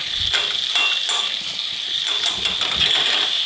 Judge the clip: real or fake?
real